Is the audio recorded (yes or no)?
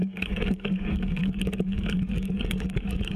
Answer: no